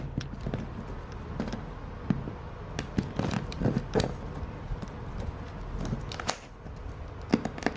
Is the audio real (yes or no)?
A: yes